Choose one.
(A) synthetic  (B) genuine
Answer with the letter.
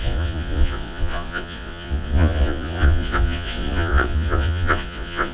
A